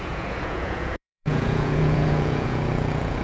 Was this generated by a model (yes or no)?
yes